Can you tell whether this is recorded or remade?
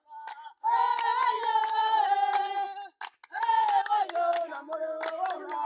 recorded